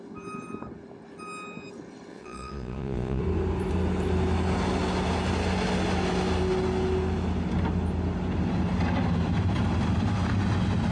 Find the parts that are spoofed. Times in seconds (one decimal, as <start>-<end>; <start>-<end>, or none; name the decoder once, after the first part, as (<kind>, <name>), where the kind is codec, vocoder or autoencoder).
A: 2.1-3.2 (vocoder, Vocos)